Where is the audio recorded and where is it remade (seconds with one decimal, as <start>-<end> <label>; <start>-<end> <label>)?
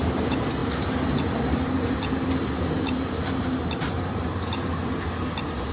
0.0-4.7 remade; 4.7-5.7 recorded